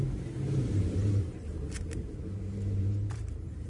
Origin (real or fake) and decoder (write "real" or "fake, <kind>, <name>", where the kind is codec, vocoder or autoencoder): fake, vocoder, BigVGAN v2